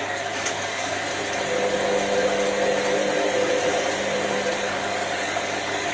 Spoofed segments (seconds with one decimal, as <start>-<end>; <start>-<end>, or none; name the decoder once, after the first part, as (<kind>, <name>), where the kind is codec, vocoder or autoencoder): 0.0-1.1 (codec, DAC); 4.6-5.9